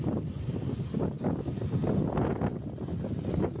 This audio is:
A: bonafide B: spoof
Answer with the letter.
A